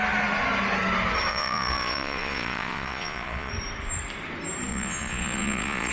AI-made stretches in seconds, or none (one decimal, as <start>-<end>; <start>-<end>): 1.3-3.5; 4.7-5.9